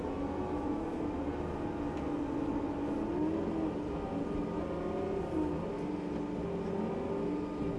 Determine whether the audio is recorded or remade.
recorded